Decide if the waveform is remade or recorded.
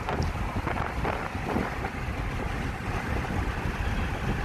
recorded